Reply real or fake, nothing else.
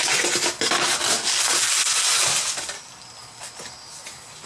real